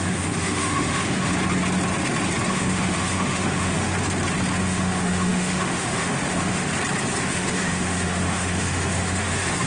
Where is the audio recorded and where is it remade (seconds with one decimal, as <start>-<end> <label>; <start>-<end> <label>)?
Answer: 0.0-1.3 remade; 1.3-2.5 recorded; 2.5-3.9 remade; 3.9-4.6 recorded; 4.6-6.7 remade; 6.7-7.2 recorded; 7.2-9.7 remade